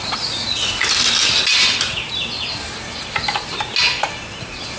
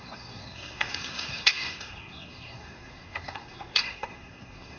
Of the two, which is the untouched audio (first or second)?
first